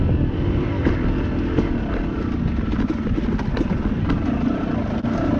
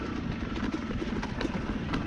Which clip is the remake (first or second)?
second